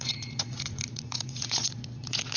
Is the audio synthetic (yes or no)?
yes